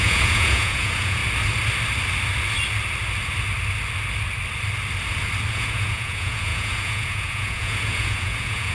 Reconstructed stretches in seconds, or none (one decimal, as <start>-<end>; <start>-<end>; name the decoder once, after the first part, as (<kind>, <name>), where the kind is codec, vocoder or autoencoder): 0.0-1.2 (vocoder, Vocos); 5.5-8.7